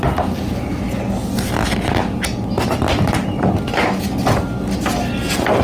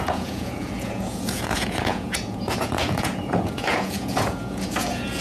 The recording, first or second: first